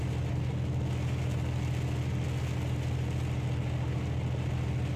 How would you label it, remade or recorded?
recorded